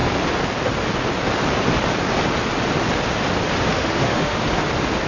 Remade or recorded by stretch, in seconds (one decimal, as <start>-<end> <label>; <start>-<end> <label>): 0.0-3.7 recorded; 3.7-4.4 remade; 4.4-5.1 recorded